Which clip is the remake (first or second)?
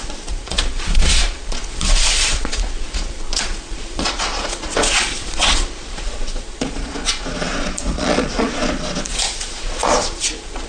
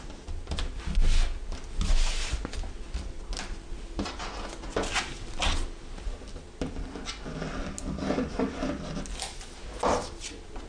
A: first